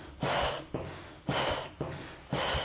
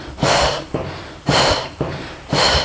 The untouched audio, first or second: first